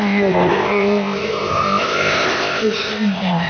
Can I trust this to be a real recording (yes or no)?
no